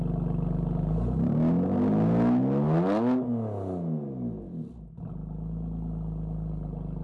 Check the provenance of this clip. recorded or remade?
recorded